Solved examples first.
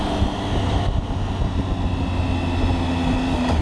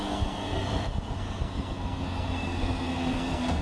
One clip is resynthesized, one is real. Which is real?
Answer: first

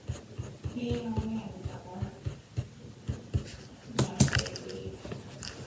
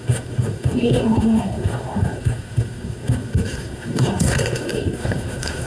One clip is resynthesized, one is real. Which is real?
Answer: first